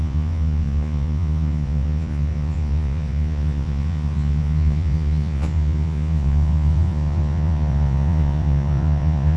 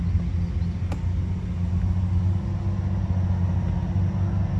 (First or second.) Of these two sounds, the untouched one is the second